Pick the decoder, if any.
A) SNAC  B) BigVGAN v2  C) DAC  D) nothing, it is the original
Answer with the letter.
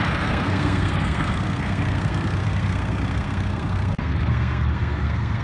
A